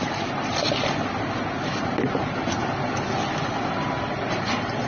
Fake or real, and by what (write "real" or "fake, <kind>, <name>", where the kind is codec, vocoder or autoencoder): real